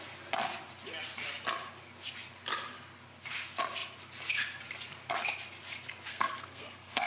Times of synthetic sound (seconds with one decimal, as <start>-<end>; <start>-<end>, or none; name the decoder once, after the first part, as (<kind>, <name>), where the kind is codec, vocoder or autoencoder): 6.1-7.1 (codec, SNAC)